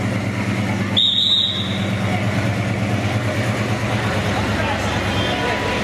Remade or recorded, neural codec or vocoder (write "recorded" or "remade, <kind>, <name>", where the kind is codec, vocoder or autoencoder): recorded